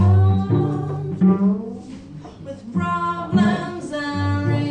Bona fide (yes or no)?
yes